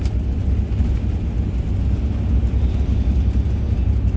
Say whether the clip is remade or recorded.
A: recorded